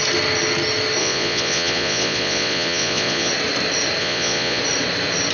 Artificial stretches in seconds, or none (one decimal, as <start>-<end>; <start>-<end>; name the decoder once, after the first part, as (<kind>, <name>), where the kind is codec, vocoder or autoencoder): 1.0-3.3 (vocoder, Vocos); 4.0-4.6